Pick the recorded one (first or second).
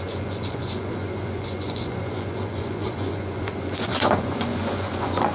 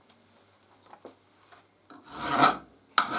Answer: second